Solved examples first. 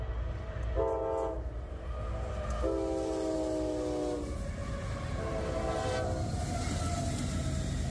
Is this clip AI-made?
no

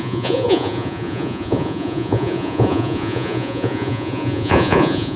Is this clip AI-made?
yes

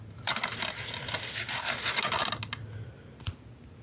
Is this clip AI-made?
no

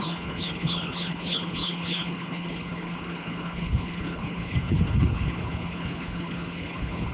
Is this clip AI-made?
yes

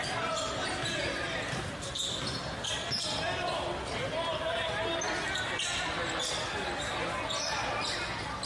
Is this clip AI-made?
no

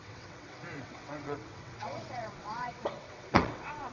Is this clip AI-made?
yes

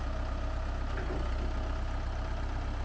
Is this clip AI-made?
no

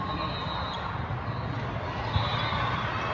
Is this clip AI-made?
no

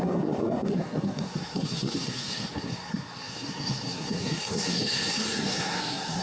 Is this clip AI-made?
yes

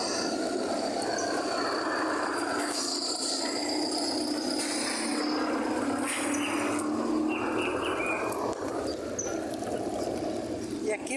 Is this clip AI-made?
no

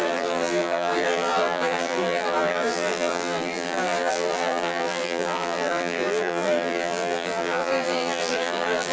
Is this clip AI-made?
yes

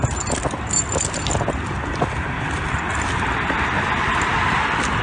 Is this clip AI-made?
no